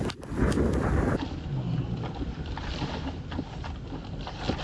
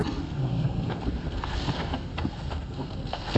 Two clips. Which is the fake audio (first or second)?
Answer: second